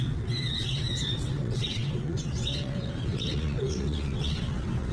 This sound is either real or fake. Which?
fake